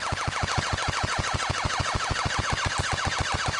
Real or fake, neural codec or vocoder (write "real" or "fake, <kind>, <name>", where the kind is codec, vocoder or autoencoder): real